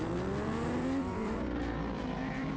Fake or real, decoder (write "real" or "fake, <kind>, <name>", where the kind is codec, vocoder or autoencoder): fake, vocoder, BigVGAN v2